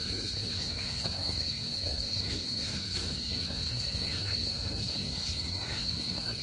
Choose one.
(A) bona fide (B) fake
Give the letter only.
B